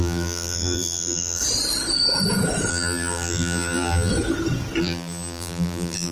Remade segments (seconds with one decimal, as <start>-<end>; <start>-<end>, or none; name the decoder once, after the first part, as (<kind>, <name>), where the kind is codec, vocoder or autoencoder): 0.0-1.4 (vocoder, BigVGAN v2); 2.7-4.1; 4.8-6.1